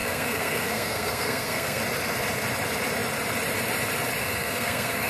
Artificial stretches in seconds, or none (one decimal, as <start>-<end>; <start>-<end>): 0.0-1.8; 4.2-5.1